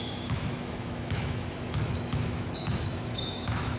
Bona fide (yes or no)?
no